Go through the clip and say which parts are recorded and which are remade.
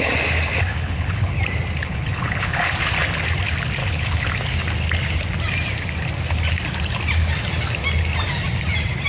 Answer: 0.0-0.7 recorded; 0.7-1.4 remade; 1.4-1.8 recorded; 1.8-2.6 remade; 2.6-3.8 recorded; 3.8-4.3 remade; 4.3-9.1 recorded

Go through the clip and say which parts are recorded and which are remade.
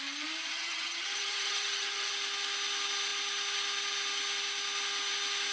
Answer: 0.0-0.5 recorded; 0.5-2.1 remade; 2.1-5.5 recorded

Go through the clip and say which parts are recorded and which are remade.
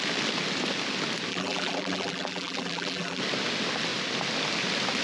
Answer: 0.0-1.3 recorded; 1.3-3.2 remade; 3.2-5.0 recorded